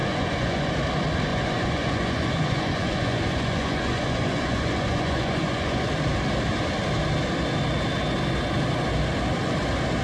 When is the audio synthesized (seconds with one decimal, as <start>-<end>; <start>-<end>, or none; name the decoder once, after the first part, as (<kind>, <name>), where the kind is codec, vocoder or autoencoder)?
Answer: 0.0-0.7 (vocoder, Vocos); 1.3-5.9